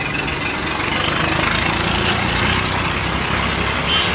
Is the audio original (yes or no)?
yes